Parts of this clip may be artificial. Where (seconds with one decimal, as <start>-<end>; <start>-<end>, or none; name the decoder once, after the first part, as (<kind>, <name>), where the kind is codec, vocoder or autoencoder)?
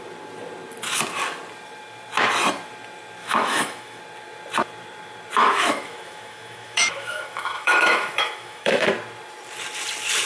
3.2-4.0 (autoencoder, DAC-VAE); 5.4-8.9